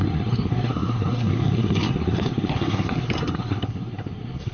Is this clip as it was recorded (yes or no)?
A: no